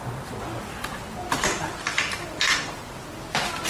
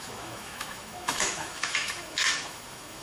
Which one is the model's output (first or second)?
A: second